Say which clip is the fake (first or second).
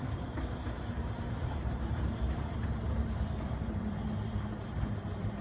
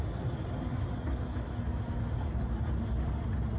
first